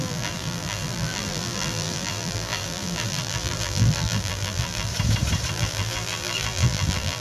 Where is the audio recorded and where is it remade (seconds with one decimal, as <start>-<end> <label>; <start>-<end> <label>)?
0.0-4.9 remade; 4.9-5.5 recorded; 5.5-7.2 remade